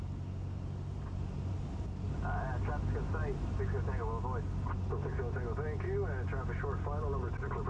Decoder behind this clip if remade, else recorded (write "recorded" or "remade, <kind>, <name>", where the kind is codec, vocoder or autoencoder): recorded